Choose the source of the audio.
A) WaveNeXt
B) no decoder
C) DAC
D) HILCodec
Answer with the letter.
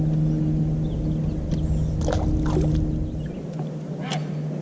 B